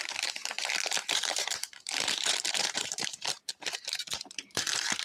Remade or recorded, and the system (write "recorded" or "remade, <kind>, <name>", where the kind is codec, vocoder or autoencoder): remade, vocoder, BigVGAN v2